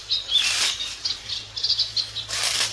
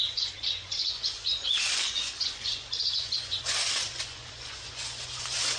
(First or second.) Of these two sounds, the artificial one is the second